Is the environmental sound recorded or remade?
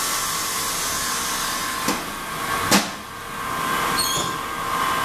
recorded